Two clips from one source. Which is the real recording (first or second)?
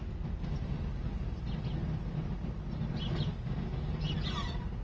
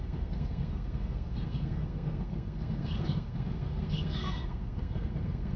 first